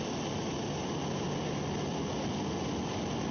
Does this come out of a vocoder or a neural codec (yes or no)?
no